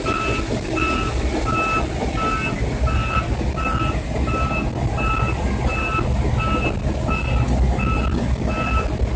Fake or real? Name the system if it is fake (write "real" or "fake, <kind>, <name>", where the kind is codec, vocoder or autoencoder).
real